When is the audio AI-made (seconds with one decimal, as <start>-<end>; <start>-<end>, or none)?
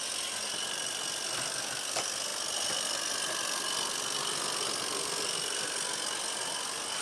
none